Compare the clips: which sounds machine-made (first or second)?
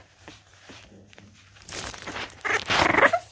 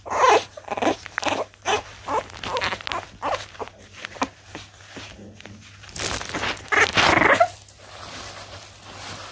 first